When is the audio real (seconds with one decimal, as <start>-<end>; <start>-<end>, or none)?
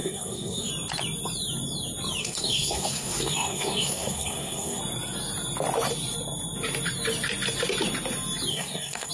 0.7-2.2; 4.8-8.5